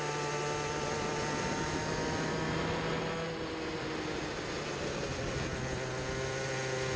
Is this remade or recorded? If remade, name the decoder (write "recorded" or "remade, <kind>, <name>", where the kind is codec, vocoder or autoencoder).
recorded